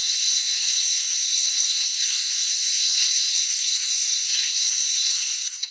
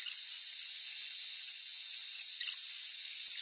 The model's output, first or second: first